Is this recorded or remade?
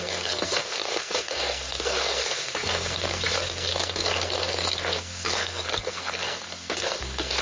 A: remade